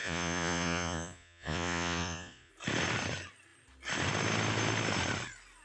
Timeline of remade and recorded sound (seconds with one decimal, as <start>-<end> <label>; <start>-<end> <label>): 0.0-2.5 remade; 2.5-5.6 recorded